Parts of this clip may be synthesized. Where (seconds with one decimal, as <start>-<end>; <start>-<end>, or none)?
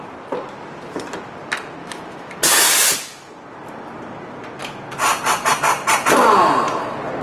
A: 1.8-2.4